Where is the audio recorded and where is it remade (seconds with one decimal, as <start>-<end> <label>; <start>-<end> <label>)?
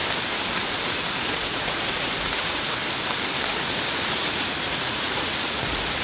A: 0.0-0.7 recorded; 0.7-2.8 remade; 2.8-3.5 recorded; 3.5-6.0 remade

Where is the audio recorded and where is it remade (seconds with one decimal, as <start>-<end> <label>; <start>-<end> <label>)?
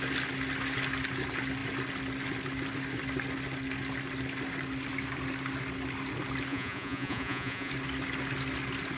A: 0.0-6.5 recorded; 6.5-7.7 remade; 7.7-9.0 recorded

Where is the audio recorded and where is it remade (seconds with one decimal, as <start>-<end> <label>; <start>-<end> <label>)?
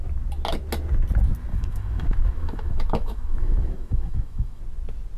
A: 0.0-1.5 recorded; 1.5-4.6 remade; 4.6-5.2 recorded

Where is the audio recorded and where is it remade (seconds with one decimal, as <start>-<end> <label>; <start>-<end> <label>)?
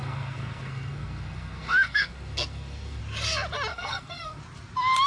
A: 0.0-3.0 remade; 3.0-3.7 recorded; 3.7-4.4 remade; 4.4-5.1 recorded